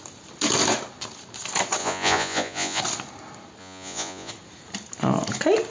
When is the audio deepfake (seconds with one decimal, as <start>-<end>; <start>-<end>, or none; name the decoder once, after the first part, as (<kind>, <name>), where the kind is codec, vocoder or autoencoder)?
1.8-2.8 (vocoder, Vocos); 3.6-4.3